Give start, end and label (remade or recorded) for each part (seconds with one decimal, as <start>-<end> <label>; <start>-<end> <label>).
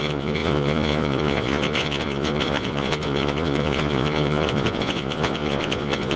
0.0-6.2 remade